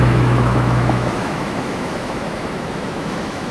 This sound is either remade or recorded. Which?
remade